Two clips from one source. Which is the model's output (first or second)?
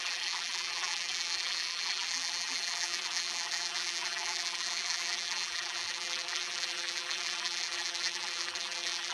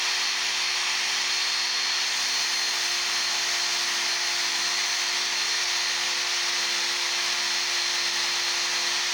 first